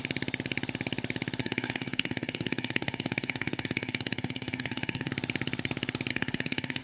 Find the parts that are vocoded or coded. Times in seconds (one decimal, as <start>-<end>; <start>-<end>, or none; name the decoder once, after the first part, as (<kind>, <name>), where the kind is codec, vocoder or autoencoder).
1.4-5.1 (codec, SNAC); 6.1-6.8